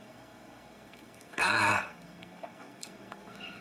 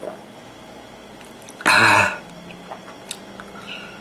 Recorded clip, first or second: second